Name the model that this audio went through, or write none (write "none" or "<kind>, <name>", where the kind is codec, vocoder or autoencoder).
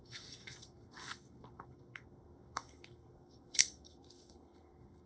codec, SNAC